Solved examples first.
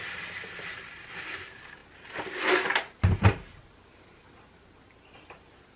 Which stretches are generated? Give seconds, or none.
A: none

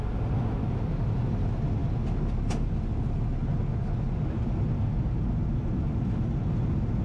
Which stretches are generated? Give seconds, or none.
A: none

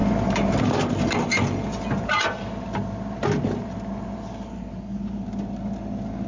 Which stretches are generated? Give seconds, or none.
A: none

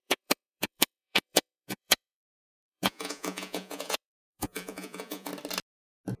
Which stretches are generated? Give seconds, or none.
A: 0.0-5.3 (vocoder, Vocos)